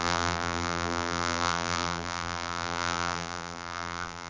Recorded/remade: remade